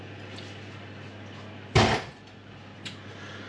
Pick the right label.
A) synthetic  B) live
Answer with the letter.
B